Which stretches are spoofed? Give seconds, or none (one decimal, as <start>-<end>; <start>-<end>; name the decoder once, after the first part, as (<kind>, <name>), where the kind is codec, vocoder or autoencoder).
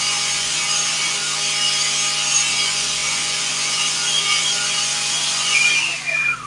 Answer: 0.0-1.2 (vocoder, Vocos); 2.3-6.5